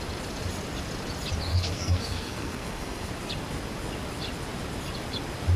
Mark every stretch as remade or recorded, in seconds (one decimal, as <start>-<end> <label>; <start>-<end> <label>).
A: 0.0-1.5 recorded; 1.5-3.1 remade; 3.1-5.6 recorded